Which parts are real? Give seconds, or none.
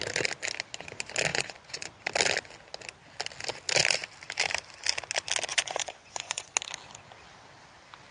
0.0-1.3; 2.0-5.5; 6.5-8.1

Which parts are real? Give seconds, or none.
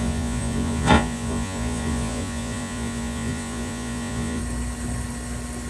4.4-5.7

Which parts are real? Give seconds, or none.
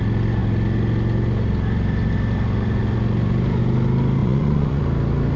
0.0-4.2; 4.8-5.4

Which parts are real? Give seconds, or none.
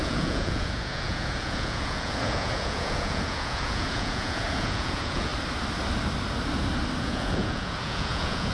5.3-7.0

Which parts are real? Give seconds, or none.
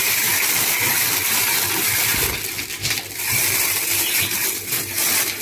0.0-5.4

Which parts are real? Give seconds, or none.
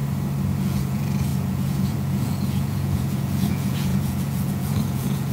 0.0-0.6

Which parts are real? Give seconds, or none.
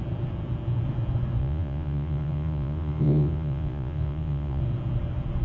0.0-1.4; 4.6-5.4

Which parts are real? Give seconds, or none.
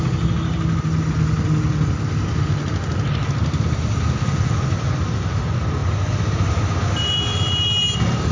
0.0-8.3